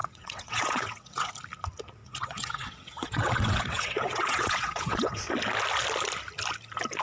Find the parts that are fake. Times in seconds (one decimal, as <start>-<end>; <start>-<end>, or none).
0.0-1.3; 2.0-5.3